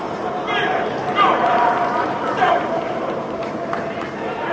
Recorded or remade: remade